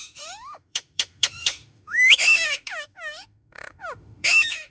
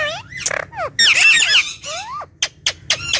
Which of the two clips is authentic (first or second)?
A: second